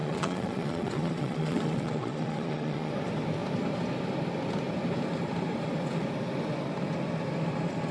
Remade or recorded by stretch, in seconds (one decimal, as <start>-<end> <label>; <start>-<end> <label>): 0.0-2.9 remade; 2.9-7.9 recorded